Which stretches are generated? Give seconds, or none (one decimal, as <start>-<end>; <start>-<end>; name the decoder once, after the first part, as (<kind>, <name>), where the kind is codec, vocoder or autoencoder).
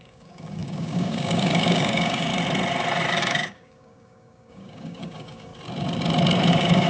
0.0-2.3 (codec, DAC); 3.2-5.5; 6.5-6.9